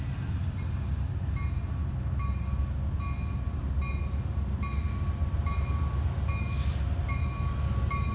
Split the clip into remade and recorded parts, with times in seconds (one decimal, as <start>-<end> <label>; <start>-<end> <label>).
0.0-8.1 recorded